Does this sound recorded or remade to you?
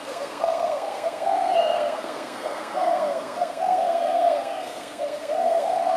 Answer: remade